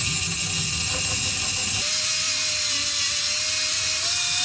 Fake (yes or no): no